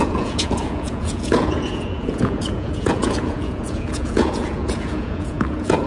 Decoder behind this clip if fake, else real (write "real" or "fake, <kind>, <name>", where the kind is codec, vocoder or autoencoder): fake, vocoder, Vocos